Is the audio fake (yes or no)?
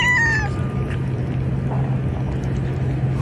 no